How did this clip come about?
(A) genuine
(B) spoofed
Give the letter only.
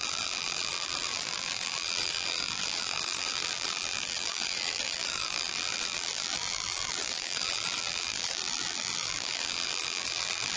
B